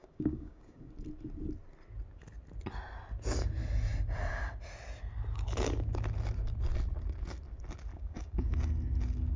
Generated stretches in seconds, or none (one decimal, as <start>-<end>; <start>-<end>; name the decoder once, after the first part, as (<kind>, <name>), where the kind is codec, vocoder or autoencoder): 0.0-0.9 (codec, DAC); 7.9-8.5